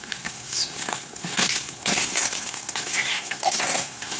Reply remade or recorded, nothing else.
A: remade